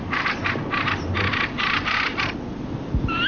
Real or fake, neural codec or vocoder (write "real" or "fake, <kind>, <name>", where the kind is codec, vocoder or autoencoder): real